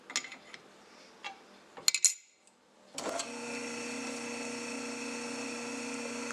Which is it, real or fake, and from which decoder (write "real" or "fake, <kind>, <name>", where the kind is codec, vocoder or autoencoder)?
real